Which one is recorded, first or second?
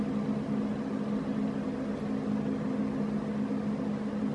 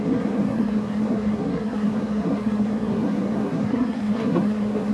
first